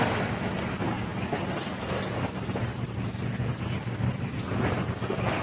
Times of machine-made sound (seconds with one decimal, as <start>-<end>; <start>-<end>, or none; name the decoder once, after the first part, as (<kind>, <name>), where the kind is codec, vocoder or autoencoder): none